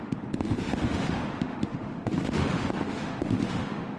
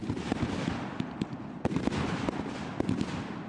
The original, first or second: second